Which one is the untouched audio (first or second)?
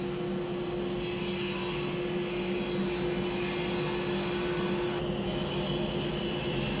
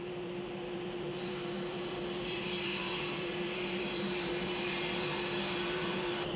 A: first